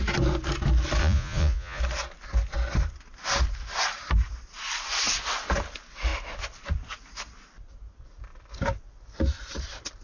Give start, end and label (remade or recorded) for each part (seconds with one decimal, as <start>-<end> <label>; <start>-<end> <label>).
0.0-1.0 recorded; 1.0-1.8 remade; 1.8-10.0 recorded